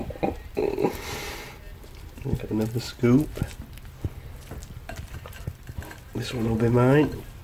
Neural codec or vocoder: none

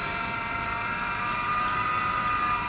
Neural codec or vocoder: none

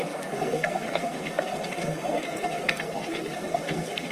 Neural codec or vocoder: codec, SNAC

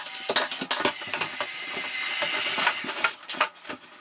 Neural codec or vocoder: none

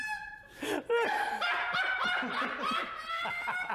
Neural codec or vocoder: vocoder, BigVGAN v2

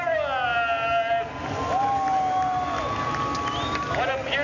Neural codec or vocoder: none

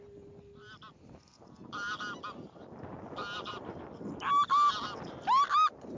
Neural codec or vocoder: none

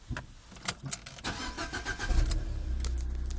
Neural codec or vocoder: none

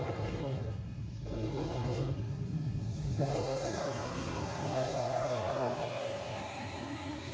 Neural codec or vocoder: codec, SNAC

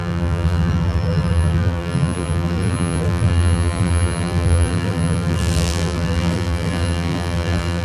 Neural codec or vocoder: vocoder, BigVGAN v2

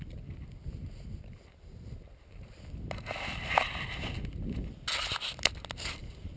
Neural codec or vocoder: none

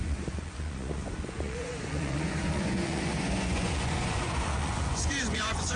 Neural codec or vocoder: vocoder, Vocos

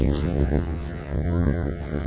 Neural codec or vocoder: vocoder, WaveNeXt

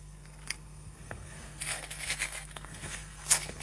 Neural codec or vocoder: codec, SNAC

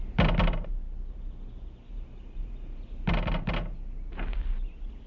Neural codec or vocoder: none